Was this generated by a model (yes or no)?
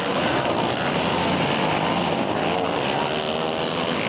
no